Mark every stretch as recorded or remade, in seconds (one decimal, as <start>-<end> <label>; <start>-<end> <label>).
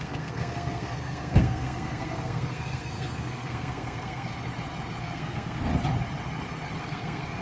0.0-4.3 remade; 4.3-5.0 recorded; 5.0-5.7 remade; 5.7-6.8 recorded; 6.8-7.4 remade